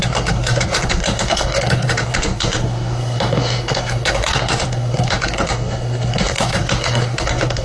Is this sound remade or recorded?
remade